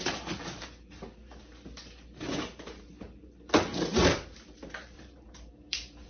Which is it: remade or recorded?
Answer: remade